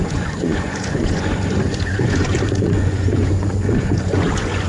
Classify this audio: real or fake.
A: fake